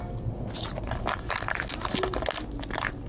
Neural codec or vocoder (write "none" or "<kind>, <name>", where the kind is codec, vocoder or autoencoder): none